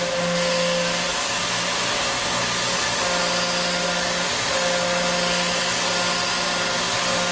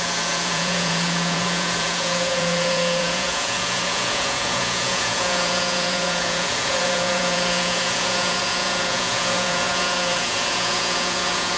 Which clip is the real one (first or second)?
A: first